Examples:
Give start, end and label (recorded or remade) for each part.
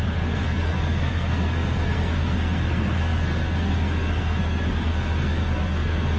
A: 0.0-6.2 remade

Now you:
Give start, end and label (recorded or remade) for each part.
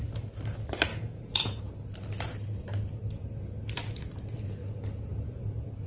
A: 0.0-0.9 recorded; 0.9-1.6 remade; 1.6-4.6 recorded; 4.6-5.4 remade; 5.4-5.9 recorded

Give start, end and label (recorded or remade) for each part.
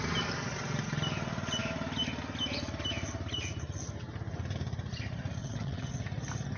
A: 0.0-5.4 recorded; 5.4-5.9 remade; 5.9-6.6 recorded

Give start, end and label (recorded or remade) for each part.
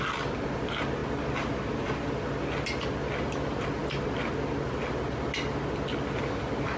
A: 0.0-6.8 recorded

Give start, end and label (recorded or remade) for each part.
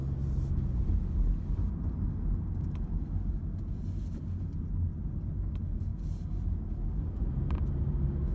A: 0.0-8.3 recorded